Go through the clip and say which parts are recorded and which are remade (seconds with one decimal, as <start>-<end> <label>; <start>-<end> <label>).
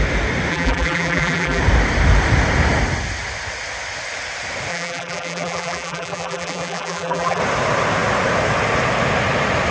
0.0-0.5 recorded; 0.5-1.6 remade; 1.6-4.7 recorded; 4.7-7.4 remade; 7.4-9.7 recorded